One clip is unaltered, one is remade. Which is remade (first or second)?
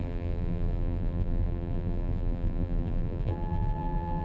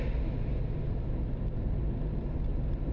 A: first